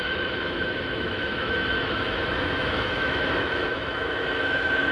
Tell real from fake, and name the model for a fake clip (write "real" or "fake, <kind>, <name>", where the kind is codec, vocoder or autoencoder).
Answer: fake, autoencoder, DAC-VAE